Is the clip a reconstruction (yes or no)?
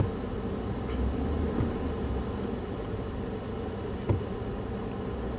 no